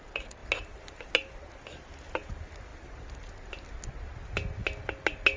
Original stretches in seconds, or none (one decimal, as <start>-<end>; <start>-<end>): 0.0-5.4